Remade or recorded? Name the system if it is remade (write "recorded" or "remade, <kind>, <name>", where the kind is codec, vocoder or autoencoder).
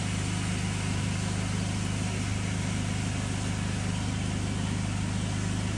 recorded